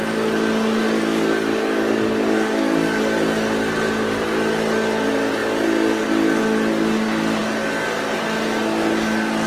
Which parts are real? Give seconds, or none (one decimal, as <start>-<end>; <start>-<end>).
0.0-1.5; 3.0-9.5